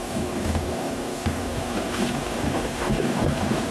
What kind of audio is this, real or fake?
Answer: fake